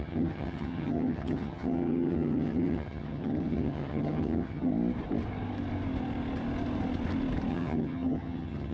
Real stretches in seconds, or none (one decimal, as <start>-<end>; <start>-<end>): 4.7-7.5